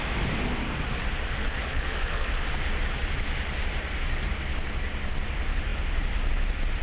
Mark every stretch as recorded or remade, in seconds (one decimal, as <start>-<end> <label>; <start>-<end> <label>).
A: 0.0-1.7 recorded; 1.7-2.3 remade; 2.3-6.8 recorded